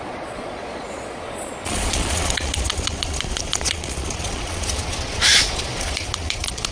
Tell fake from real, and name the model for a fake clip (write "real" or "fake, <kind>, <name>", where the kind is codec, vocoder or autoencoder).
fake, vocoder, Vocos